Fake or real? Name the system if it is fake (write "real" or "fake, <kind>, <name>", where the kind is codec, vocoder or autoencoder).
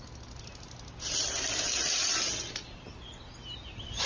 real